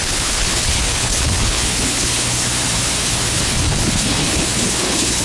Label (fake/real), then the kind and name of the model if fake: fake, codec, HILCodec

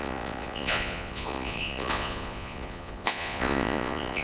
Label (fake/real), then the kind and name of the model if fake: fake, vocoder, Vocos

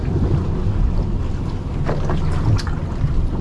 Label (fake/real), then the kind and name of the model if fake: real